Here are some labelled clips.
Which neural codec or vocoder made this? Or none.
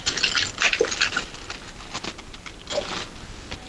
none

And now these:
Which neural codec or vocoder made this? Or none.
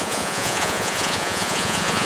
vocoder, Vocos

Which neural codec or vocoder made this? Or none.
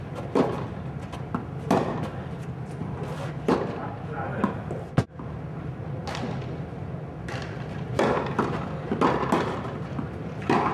none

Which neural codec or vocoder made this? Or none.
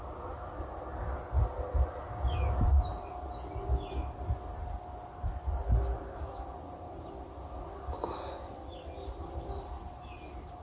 none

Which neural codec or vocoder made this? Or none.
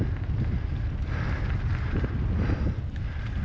none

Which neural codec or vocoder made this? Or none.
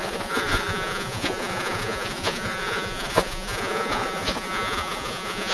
vocoder, Vocos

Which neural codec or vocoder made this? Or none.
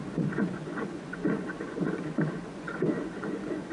vocoder, Vocos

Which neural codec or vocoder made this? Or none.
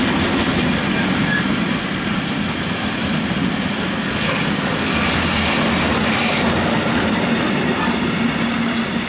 none